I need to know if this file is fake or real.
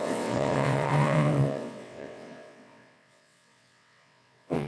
fake